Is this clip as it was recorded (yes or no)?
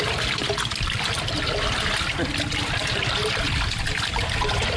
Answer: yes